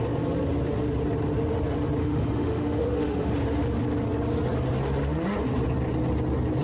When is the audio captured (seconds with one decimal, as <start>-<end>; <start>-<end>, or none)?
0.0-2.0; 3.3-6.6